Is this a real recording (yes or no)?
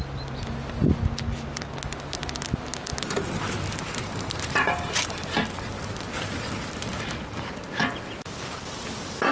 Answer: yes